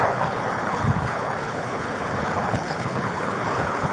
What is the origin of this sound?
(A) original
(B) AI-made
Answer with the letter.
B